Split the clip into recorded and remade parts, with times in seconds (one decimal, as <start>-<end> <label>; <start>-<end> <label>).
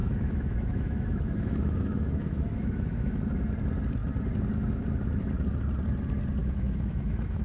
0.0-3.2 remade; 3.2-6.4 recorded; 6.4-7.4 remade